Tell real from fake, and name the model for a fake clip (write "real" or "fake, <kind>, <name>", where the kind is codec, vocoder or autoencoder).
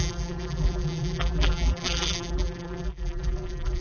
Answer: fake, vocoder, BigVGAN v2